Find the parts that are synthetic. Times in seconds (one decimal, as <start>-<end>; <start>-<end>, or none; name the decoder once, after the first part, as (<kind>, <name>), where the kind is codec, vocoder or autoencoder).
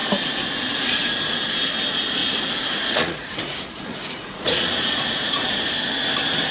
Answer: 0.0-1.2 (vocoder, Vocos); 2.2-5.7